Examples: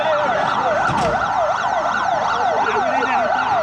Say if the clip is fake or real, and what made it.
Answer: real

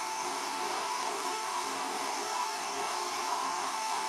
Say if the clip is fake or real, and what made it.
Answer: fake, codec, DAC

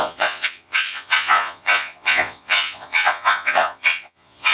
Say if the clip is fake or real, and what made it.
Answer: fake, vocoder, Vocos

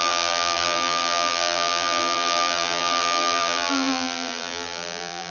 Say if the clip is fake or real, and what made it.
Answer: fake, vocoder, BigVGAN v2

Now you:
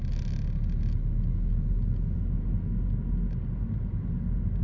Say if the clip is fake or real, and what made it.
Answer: real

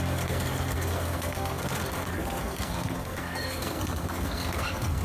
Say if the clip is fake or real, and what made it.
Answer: fake, codec, SNAC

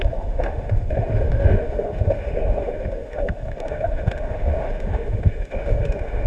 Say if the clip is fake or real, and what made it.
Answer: fake, autoencoder, DAC-VAE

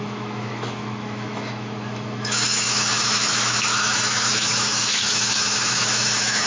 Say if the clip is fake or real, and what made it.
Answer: fake, autoencoder, DAC-VAE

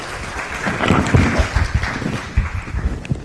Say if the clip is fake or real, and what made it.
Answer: real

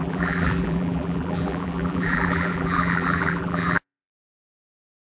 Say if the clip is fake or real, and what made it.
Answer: fake, vocoder, BigVGAN v2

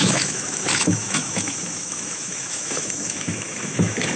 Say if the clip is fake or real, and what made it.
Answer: fake, autoencoder, DAC-VAE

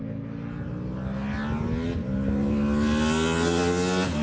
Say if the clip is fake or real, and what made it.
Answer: real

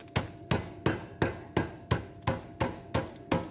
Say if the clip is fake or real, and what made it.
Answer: real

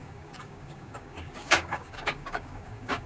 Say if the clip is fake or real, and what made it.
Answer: fake, codec, DAC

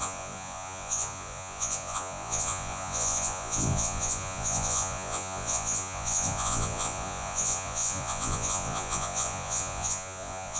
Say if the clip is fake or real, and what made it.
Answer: fake, vocoder, Vocos